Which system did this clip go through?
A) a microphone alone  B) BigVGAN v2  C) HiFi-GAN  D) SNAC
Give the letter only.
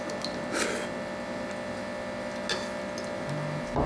A